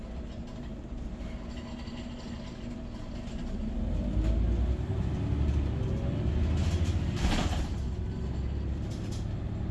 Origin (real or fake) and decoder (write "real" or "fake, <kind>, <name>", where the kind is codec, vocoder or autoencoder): real